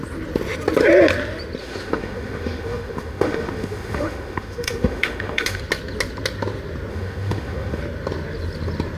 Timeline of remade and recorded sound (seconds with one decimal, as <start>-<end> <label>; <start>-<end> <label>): 0.0-1.6 recorded; 1.6-5.6 remade; 5.6-6.9 recorded; 6.9-7.8 remade; 7.8-9.0 recorded